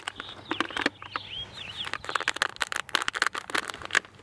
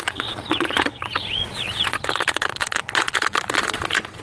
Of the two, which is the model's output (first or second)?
second